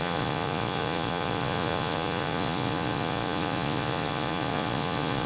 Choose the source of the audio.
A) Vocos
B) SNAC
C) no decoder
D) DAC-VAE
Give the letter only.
A